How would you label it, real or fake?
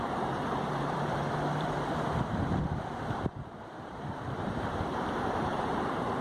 fake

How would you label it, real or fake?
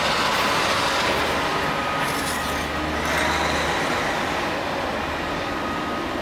real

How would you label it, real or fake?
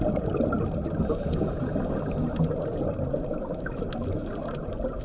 real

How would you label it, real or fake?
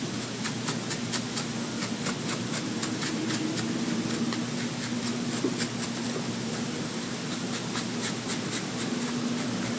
real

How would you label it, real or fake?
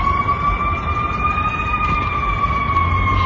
real